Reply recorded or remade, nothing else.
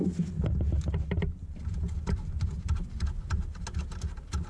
recorded